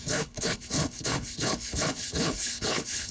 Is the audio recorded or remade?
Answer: remade